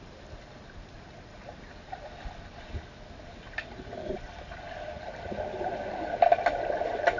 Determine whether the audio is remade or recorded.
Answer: recorded